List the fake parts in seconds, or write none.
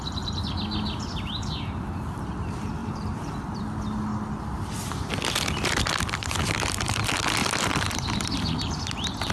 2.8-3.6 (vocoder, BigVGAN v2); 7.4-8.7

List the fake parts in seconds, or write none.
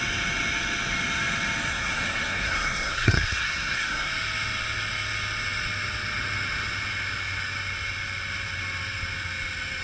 1.7-4.1 (codec, SNAC)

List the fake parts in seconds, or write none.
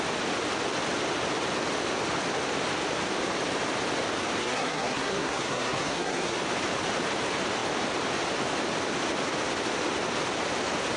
4.4-6.4 (codec, SNAC)